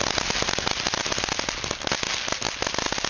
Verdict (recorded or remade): recorded